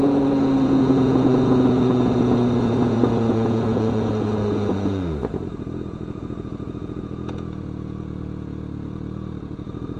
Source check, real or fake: fake